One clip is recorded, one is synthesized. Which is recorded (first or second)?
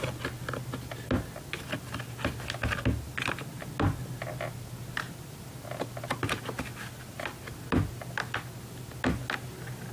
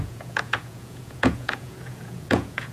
first